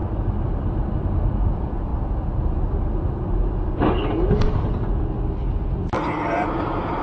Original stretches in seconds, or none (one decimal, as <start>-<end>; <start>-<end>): 0.0-7.0